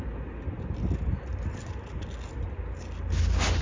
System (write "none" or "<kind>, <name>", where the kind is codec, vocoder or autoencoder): none